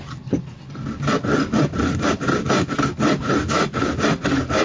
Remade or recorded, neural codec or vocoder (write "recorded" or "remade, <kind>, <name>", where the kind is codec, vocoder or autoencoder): recorded